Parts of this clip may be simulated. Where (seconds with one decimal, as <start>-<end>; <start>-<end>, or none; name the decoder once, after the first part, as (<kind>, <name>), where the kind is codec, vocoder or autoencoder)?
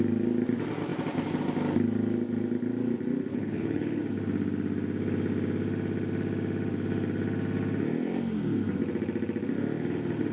3.3-4.0 (codec, HILCodec)